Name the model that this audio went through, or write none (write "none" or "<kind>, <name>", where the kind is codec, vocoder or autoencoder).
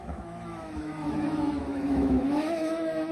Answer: autoencoder, DAC-VAE